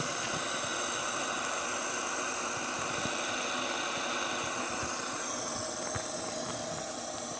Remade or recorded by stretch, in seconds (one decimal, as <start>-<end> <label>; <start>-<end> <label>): 0.0-7.4 recorded